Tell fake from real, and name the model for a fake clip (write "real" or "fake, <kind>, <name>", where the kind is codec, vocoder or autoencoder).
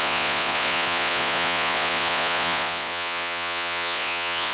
fake, vocoder, Vocos